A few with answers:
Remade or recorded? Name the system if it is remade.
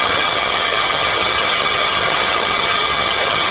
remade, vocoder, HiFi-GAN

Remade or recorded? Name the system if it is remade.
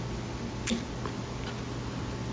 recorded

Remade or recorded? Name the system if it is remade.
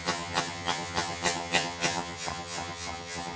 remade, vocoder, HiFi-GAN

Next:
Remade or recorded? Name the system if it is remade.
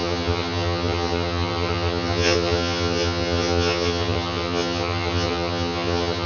remade, vocoder, HiFi-GAN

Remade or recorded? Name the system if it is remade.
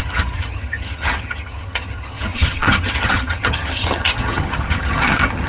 remade, vocoder, HiFi-GAN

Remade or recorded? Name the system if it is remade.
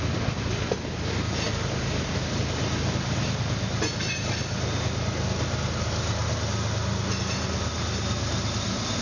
recorded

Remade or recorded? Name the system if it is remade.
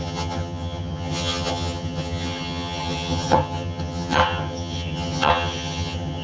remade, vocoder, HiFi-GAN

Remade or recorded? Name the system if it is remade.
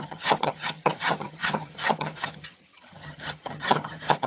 remade, vocoder, HiFi-GAN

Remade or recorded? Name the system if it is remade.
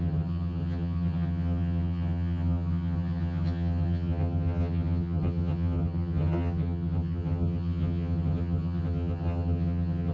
remade, vocoder, HiFi-GAN